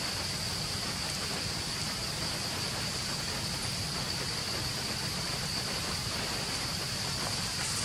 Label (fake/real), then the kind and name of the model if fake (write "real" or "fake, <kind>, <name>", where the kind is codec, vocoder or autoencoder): real